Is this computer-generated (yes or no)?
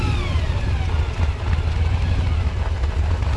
no